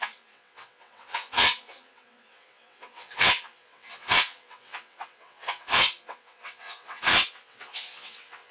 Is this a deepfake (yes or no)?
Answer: yes